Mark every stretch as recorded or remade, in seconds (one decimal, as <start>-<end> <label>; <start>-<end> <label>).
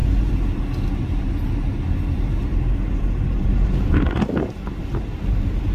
0.0-5.7 recorded